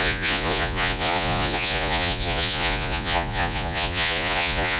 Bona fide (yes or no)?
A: no